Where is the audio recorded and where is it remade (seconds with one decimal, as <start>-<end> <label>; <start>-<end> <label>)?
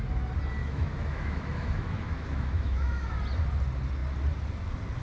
0.0-0.6 recorded; 0.6-3.1 remade; 3.1-5.0 recorded